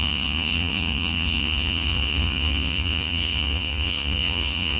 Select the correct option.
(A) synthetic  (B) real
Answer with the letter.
A